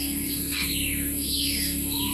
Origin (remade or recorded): remade